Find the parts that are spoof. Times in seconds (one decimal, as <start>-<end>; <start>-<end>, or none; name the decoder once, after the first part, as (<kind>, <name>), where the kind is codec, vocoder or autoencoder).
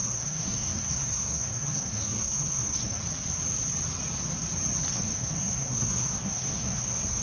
0.0-3.0 (codec, SNAC); 4.9-7.2